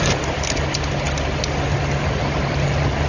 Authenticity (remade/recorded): recorded